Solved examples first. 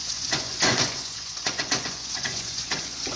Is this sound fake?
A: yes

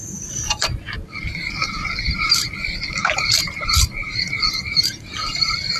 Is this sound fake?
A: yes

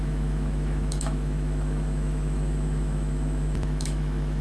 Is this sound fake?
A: yes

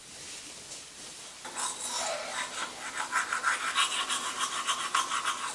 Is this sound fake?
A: no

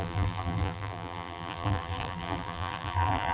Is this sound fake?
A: yes